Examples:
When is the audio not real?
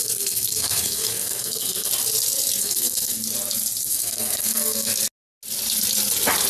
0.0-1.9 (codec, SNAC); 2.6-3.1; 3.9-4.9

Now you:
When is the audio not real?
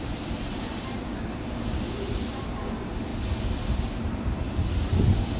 0.0-3.1 (vocoder, BigVGAN v2); 3.6-5.4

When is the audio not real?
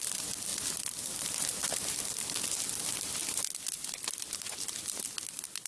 none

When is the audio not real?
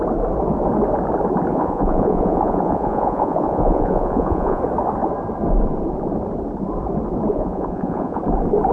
1.5-4.6 (vocoder, Vocos); 7.3-8.2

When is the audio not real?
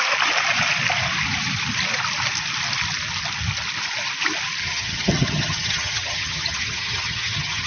4.6-7.7 (vocoder, HiFi-GAN)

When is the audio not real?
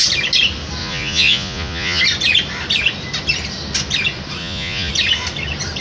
0.8-2.0 (vocoder, Vocos); 4.4-4.9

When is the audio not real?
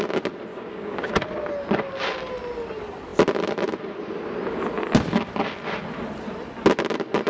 0.5-1.1 (codec, DAC)